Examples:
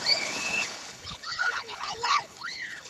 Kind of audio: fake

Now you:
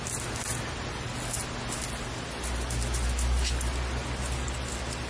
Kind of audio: real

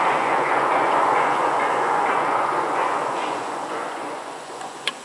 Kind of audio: fake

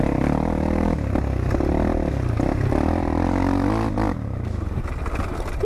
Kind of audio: real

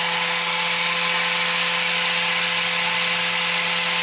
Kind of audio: real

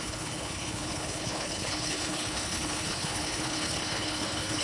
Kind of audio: fake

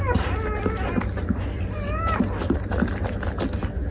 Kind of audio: real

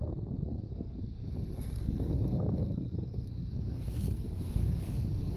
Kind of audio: fake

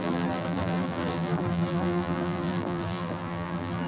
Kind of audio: fake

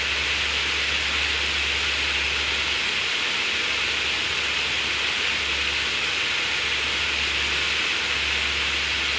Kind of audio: real